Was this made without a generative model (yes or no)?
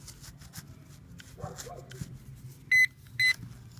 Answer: yes